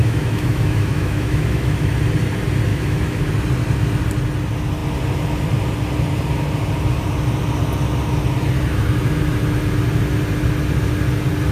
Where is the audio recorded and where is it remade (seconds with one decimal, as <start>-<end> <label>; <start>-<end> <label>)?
0.0-1.9 remade; 1.9-2.7 recorded; 2.7-3.3 remade; 3.3-11.5 recorded